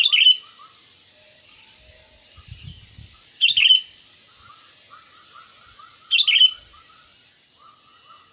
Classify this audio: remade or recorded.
recorded